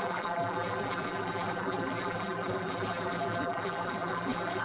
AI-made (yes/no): yes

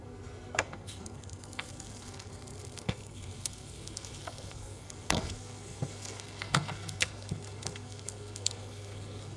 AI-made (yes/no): yes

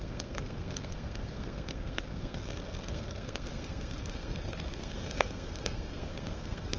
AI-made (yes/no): yes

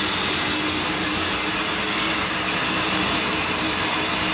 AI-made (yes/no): no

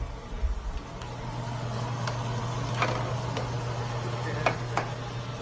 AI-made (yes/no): no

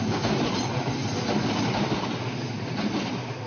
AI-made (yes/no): no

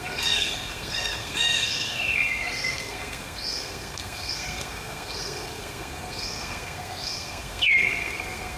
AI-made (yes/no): yes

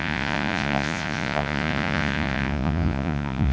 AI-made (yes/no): yes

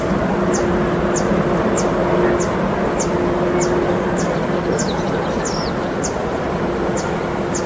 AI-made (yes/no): no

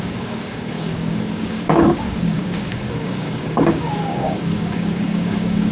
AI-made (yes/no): yes